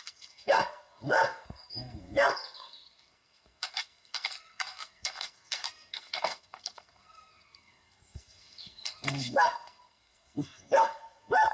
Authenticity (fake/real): fake